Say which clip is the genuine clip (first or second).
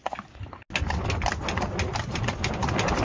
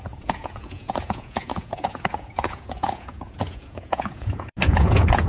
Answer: first